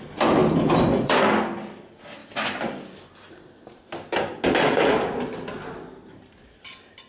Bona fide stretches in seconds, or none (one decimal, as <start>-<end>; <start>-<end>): 0.0-0.4; 1.2-2.2; 3.9-7.1